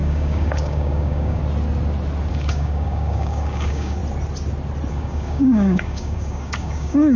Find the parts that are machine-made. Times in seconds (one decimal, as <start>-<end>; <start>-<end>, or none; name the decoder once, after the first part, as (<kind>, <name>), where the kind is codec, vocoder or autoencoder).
0.0-1.4 (codec, DAC); 2.3-4.0; 4.9-7.2